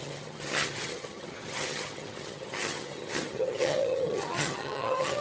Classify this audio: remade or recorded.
remade